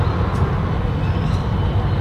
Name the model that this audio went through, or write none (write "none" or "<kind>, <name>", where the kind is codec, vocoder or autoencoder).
none